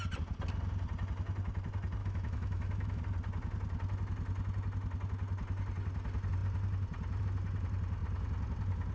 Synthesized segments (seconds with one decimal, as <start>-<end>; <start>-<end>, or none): 2.0-3.0